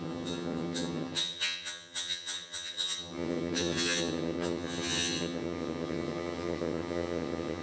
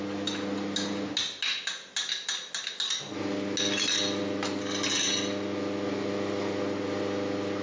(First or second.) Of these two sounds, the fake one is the first